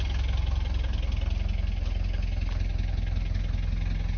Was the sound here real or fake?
real